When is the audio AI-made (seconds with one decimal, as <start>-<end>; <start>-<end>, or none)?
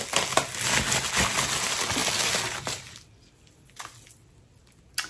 none